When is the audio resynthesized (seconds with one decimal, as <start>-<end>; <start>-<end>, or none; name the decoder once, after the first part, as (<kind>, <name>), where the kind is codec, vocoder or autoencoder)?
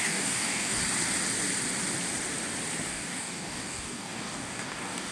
0.0-0.8 (codec, DAC); 2.9-5.1